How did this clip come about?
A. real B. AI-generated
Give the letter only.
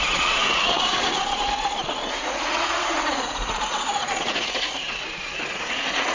B